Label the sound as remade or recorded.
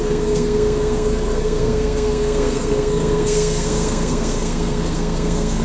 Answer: remade